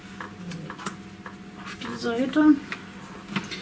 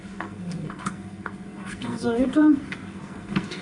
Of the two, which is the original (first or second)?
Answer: first